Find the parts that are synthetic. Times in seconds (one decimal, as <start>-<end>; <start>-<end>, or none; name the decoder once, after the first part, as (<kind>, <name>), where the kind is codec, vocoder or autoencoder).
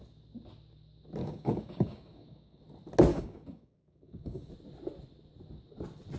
1.2-2.6 (codec, DAC); 3.1-4.5